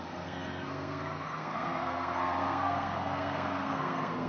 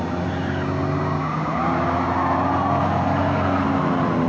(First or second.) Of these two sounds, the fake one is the first